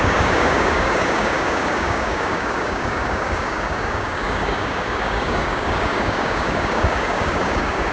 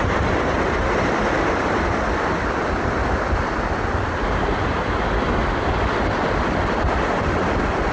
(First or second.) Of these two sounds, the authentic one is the second